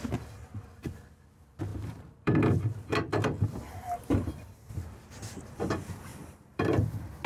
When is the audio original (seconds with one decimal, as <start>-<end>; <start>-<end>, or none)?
0.0-1.7; 2.6-6.1; 6.8-7.3